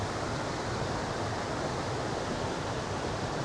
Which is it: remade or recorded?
recorded